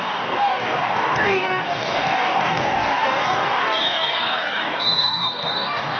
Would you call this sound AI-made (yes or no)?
yes